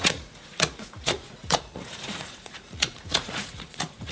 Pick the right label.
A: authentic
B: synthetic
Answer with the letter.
B